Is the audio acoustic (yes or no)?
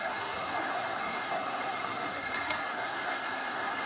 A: no